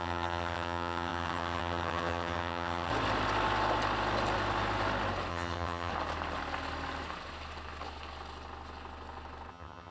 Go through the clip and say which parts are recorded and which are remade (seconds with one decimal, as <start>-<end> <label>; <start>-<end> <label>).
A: 0.0-2.9 remade; 2.9-5.3 recorded; 5.3-5.9 remade; 5.9-9.5 recorded; 9.5-9.9 remade